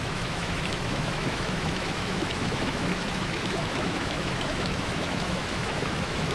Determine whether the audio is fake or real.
fake